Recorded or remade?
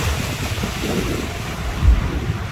remade